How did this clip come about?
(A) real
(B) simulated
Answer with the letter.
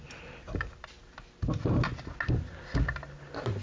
A